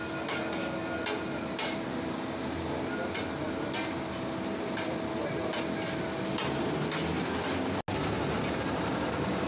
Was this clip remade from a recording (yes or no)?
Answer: no